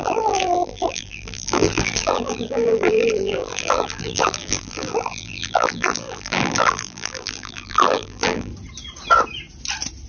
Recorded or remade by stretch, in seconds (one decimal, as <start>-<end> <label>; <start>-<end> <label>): 0.0-8.5 remade; 8.5-10.1 recorded